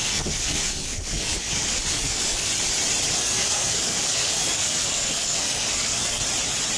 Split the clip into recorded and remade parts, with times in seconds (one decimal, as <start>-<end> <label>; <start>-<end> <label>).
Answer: 0.0-2.5 remade; 2.5-3.1 recorded; 3.1-6.2 remade; 6.2-6.8 recorded